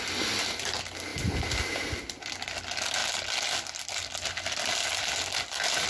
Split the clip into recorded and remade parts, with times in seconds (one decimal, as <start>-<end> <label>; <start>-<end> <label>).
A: 0.0-5.9 recorded

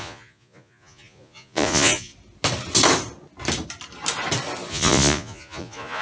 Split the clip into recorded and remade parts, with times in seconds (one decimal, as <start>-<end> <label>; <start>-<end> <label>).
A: 0.0-2.1 remade; 2.1-4.7 recorded; 4.7-6.0 remade